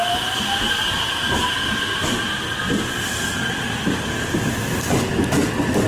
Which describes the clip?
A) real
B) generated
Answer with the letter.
A